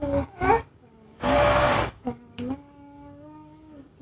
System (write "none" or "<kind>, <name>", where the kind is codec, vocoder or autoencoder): codec, DAC